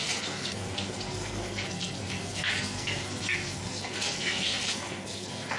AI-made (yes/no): yes